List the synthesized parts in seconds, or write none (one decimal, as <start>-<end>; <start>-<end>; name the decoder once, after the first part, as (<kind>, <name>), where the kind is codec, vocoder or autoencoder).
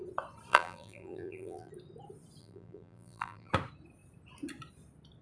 0.5-1.7 (vocoder, BigVGAN v2); 2.4-3.5